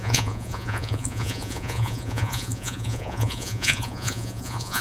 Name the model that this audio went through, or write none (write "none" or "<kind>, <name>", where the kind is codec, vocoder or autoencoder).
vocoder, Vocos